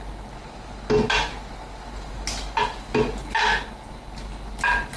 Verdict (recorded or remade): recorded